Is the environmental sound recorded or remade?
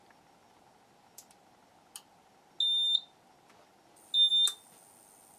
recorded